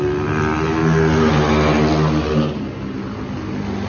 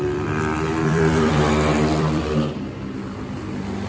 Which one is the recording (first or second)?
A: first